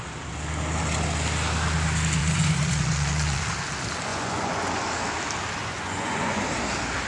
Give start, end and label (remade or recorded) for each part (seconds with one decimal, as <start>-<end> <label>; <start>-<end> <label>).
0.0-2.2 recorded; 2.2-3.4 remade; 3.4-4.1 recorded; 4.1-4.8 remade; 4.8-5.6 recorded; 5.6-6.4 remade; 6.4-7.1 recorded